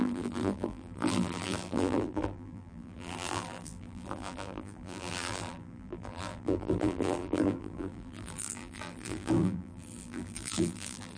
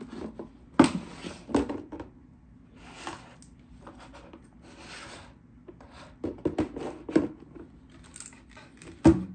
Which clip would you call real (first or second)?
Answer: second